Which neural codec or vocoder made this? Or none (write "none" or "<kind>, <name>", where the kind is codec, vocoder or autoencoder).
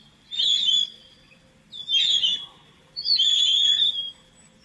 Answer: none